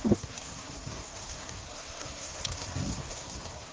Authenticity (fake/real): fake